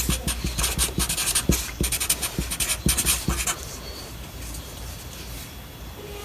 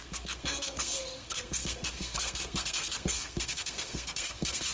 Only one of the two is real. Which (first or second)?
first